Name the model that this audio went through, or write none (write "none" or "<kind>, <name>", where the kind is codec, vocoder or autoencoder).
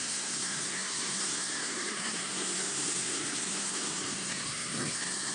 codec, SNAC